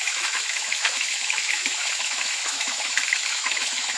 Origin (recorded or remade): remade